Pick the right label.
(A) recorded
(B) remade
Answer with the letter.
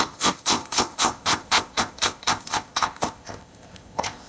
B